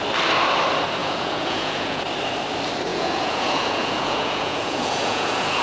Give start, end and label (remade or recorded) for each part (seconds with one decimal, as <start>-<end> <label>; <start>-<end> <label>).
0.0-1.0 recorded; 1.0-2.0 remade; 2.0-2.9 recorded; 2.9-5.6 remade